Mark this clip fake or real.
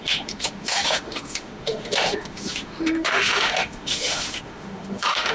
fake